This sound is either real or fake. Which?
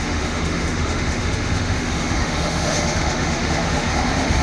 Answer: fake